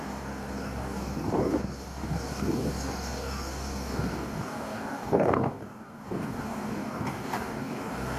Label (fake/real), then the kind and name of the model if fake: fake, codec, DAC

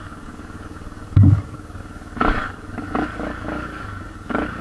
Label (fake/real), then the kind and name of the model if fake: fake, codec, DAC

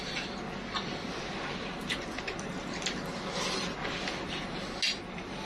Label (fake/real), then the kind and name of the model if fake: real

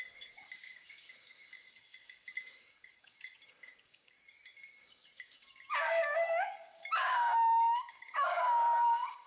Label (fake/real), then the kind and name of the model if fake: fake, codec, DAC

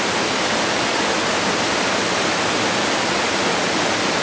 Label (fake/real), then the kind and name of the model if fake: real